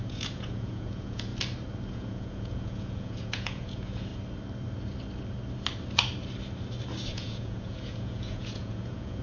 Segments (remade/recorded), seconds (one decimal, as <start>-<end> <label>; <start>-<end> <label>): 0.0-1.3 remade; 1.3-1.9 recorded; 1.9-4.1 remade; 4.1-7.1 recorded; 7.1-9.2 remade

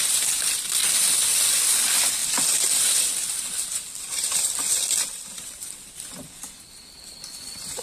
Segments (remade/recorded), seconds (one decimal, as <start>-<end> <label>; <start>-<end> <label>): 0.0-0.8 recorded; 0.8-1.8 remade; 1.8-2.2 recorded; 2.2-6.9 remade; 6.9-7.8 recorded

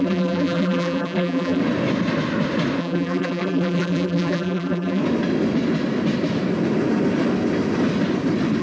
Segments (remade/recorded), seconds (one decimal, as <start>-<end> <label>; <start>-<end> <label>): 0.0-1.6 remade; 1.6-2.8 recorded; 2.8-5.0 remade; 5.0-8.6 recorded

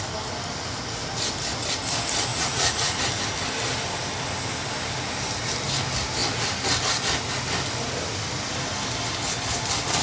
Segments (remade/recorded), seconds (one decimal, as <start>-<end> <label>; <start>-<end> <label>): 0.0-2.3 recorded; 2.3-3.0 remade; 3.0-10.0 recorded

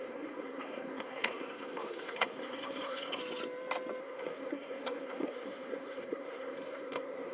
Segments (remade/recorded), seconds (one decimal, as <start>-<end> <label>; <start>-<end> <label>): 0.0-3.2 remade; 3.2-4.0 recorded; 4.0-7.3 remade

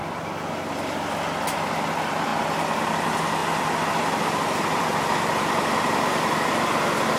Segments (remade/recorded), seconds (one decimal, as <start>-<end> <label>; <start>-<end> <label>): 0.0-2.3 recorded; 2.3-2.8 remade; 2.8-3.4 recorded; 3.4-5.8 remade; 5.8-7.2 recorded

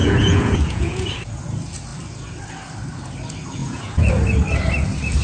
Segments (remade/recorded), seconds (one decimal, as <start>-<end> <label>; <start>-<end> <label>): 0.0-1.1 remade; 1.1-3.6 recorded; 3.6-4.1 remade; 4.1-5.2 recorded

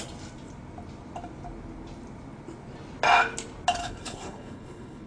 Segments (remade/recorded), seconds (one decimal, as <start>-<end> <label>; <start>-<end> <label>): 0.0-3.8 recorded; 3.8-5.1 remade